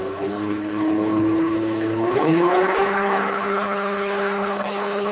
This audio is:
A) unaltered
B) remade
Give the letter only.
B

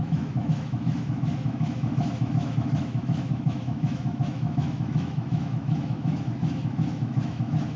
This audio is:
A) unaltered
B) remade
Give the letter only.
B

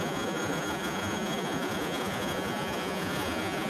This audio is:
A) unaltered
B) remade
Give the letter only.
B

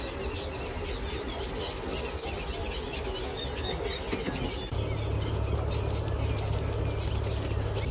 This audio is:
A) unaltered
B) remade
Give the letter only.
A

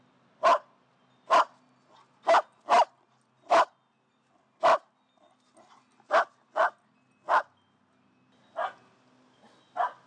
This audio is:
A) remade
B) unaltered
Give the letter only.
B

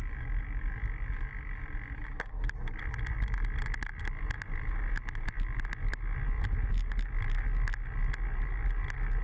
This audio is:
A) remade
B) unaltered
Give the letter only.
B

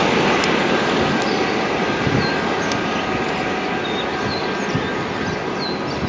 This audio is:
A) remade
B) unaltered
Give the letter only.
B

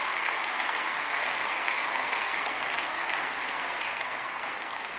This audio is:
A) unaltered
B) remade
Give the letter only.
B